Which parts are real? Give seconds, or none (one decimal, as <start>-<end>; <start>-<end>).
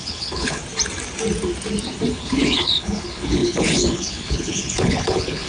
0.6-2.1